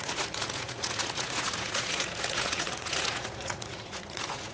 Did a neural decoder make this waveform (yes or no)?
yes